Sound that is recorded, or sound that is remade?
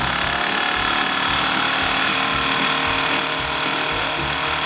recorded